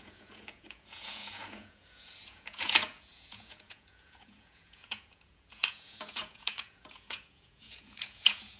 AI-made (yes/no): yes